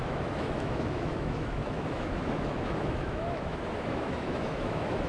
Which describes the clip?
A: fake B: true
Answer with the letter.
A